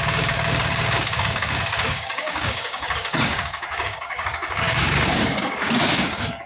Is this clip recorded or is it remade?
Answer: remade